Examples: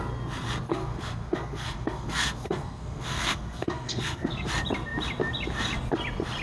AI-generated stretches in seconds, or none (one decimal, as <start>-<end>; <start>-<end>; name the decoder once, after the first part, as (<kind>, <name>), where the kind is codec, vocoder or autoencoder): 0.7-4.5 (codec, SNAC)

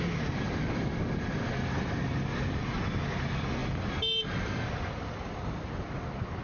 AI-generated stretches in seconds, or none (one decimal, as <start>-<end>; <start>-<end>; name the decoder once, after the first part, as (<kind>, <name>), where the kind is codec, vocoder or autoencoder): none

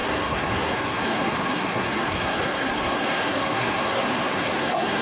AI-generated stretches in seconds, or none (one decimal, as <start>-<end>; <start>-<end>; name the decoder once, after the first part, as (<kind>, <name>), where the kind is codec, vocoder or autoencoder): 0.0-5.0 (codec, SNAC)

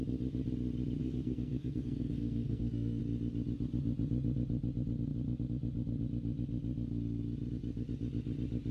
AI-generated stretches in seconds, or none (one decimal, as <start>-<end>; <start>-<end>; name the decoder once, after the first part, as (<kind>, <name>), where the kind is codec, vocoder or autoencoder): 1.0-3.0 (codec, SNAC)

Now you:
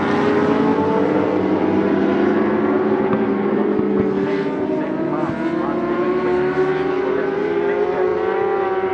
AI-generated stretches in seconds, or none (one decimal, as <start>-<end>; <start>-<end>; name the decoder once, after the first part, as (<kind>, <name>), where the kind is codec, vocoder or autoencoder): none

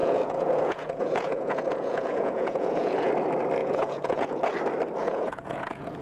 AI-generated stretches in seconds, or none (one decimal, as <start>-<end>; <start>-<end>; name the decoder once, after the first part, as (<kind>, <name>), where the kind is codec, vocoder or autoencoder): 0.0-3.1 (vocoder, Vocos); 3.6-4.4; 5.0-6.0

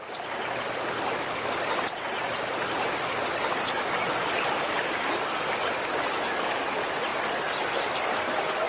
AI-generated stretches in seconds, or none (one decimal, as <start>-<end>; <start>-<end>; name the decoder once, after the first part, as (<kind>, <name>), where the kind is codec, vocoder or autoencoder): none

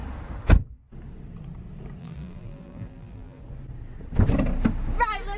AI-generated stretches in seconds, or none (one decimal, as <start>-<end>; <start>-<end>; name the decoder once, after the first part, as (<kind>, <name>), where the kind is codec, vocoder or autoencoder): 2.0-3.4 (vocoder, BigVGAN v2)